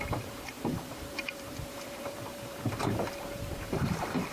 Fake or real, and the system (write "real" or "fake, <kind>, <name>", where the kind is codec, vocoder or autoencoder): fake, vocoder, BigVGAN v2